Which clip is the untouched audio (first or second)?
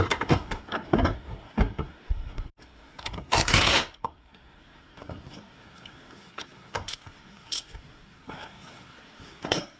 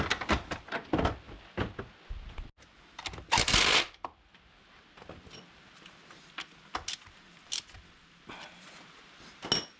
second